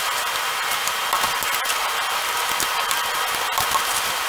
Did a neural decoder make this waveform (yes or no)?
no